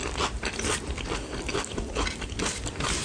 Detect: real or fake real